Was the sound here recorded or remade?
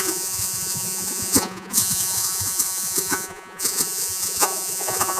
remade